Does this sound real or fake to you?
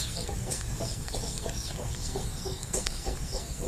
fake